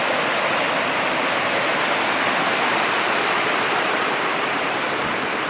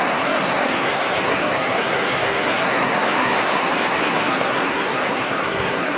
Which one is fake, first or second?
second